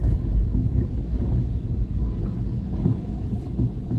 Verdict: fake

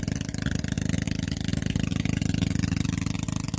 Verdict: real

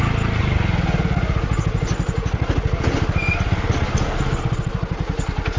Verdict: real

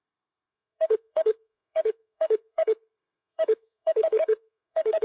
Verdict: fake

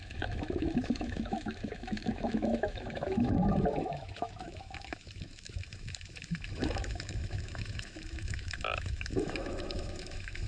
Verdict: fake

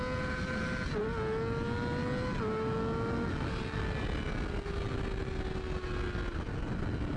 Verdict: real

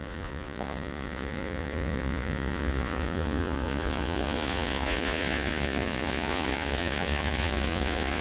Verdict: fake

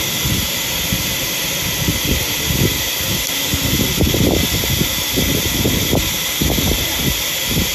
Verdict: real